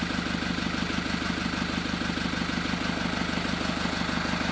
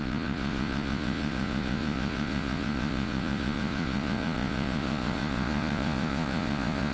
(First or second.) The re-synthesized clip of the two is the second